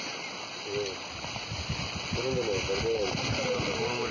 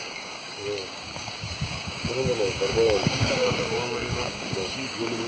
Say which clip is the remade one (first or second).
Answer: second